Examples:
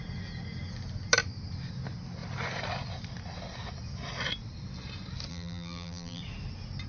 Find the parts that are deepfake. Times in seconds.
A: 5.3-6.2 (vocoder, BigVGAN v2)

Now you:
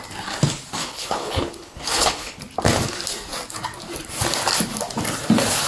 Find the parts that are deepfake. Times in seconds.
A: 0.8-2.4 (codec, HILCodec)

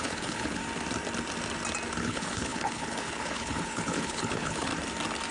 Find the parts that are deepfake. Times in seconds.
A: 0.0-0.6 (codec, HILCodec); 2.0-4.7

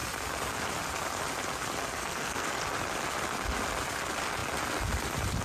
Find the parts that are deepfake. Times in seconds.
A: 2.0-2.6 (codec, SNAC)

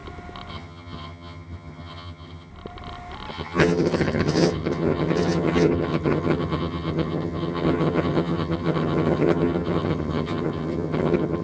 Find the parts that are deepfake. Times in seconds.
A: 0.5-2.5 (vocoder, HiFi-GAN); 3.3-11.4

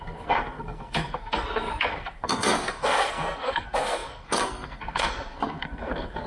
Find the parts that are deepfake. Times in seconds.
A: 0.0-6.3 (codec, SNAC)

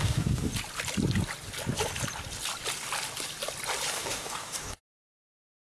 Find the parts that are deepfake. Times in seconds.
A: 0.0-0.5 (codec, DAC); 3.9-5.7